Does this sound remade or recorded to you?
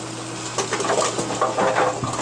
recorded